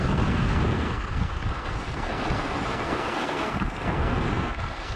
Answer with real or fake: fake